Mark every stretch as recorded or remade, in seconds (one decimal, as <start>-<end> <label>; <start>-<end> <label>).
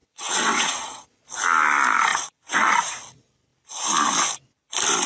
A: 0.0-1.2 remade; 1.2-2.1 recorded; 2.1-2.7 remade; 2.7-5.1 recorded